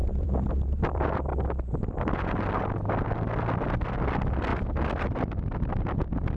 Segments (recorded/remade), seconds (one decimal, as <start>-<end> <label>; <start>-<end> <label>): 0.0-1.3 remade; 1.3-3.5 recorded; 3.5-4.5 remade; 4.5-5.6 recorded; 5.6-6.4 remade